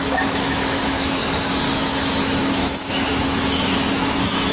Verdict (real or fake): fake